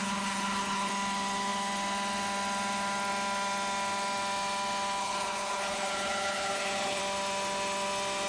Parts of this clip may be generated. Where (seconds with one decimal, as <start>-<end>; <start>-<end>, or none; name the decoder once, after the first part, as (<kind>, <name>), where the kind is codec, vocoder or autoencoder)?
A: 0.0-0.9 (codec, HILCodec); 5.0-7.0